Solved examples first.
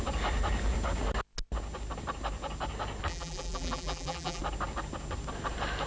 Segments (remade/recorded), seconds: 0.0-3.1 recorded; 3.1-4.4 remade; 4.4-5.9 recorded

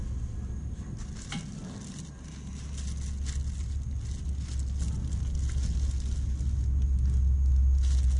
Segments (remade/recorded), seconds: 0.0-8.2 recorded